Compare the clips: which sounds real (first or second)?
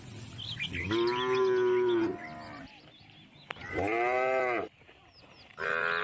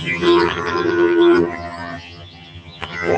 first